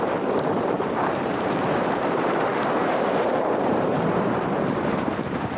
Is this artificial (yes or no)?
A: yes